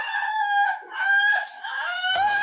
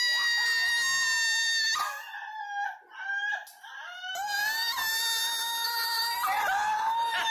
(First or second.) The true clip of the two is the second